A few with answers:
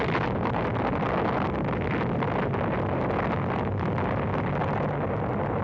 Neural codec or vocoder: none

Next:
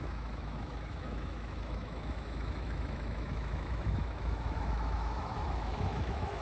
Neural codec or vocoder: autoencoder, DAC-VAE